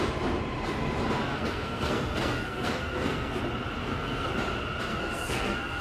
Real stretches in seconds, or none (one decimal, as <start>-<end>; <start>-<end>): 0.0-1.3; 3.4-3.8; 4.3-4.9